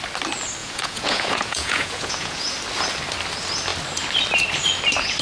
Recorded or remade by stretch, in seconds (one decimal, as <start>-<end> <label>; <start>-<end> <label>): 0.0-0.6 recorded; 0.6-2.5 remade; 2.5-5.2 recorded

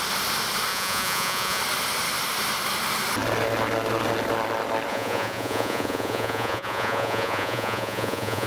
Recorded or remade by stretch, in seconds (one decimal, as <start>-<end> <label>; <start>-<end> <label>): 0.0-0.7 recorded; 0.7-1.6 remade; 1.6-4.9 recorded; 4.9-8.5 remade

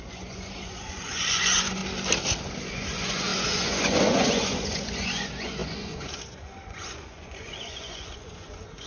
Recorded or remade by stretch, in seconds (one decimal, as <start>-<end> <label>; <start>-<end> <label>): 0.0-1.8 remade; 1.8-2.7 recorded; 2.7-8.9 remade